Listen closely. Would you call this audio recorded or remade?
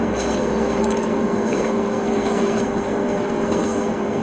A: remade